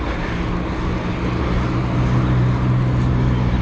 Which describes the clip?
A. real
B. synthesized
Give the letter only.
A